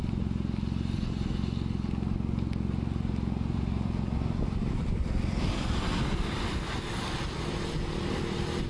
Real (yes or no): yes